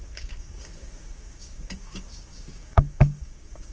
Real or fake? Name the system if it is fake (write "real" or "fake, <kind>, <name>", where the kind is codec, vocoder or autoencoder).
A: fake, codec, DAC